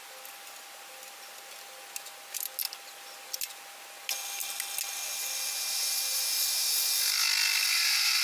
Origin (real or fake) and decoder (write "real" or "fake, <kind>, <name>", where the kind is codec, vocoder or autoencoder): real